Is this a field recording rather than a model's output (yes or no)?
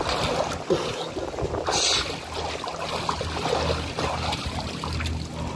yes